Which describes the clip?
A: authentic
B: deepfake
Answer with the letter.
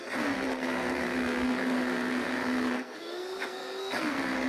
B